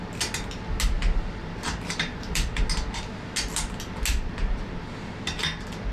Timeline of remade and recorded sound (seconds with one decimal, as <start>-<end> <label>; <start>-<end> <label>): 0.0-1.4 recorded; 1.4-2.6 remade; 2.6-5.9 recorded